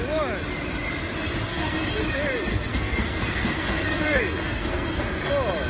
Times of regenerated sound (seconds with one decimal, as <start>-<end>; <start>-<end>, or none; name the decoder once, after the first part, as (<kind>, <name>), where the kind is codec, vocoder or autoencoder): 1.5-2.0 (codec, SNAC); 2.5-5.3